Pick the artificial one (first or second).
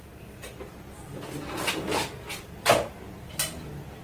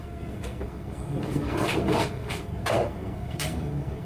second